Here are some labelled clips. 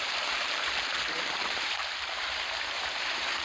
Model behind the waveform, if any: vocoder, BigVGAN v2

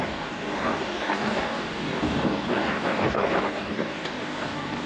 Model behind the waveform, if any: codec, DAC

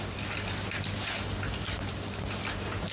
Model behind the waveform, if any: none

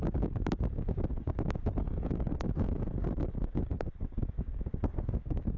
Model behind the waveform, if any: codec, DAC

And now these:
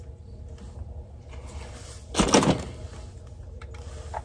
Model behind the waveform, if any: none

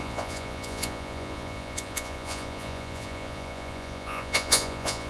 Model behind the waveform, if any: vocoder, Vocos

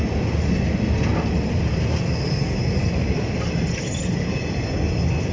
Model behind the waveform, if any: none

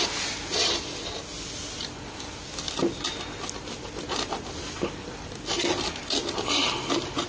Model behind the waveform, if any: none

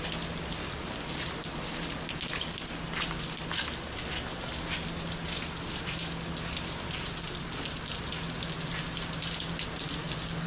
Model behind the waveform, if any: none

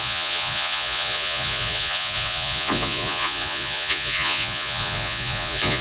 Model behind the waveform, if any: vocoder, Vocos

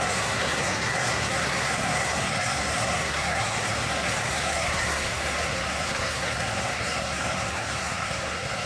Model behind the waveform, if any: codec, SNAC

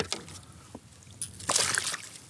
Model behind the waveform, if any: none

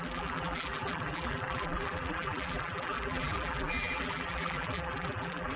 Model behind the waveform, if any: vocoder, BigVGAN v2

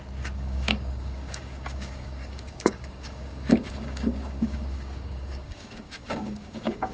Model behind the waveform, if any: codec, DAC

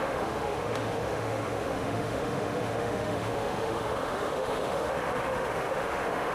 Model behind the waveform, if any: autoencoder, DAC-VAE